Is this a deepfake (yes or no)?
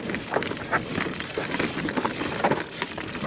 no